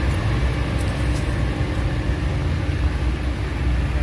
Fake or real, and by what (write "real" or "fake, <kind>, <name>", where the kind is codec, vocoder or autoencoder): real